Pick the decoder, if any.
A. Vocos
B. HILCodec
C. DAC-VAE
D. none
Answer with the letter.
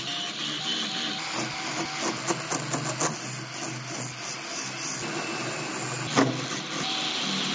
D